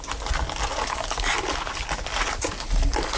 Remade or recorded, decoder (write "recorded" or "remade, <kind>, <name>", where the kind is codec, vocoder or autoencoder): recorded